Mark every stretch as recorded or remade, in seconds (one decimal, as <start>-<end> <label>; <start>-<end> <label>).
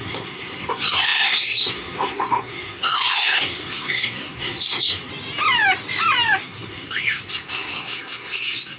0.0-5.1 remade; 5.1-6.4 recorded; 6.4-8.8 remade